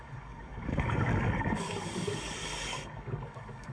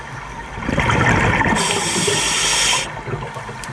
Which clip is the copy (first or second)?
first